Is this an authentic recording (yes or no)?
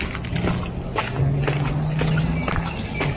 yes